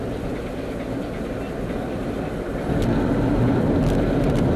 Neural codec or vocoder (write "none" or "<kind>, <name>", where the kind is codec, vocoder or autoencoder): none